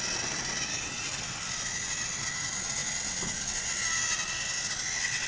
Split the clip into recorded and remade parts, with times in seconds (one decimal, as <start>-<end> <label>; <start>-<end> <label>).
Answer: 0.0-0.7 recorded; 0.7-1.2 remade; 1.2-5.3 recorded